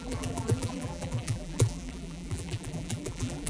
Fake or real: fake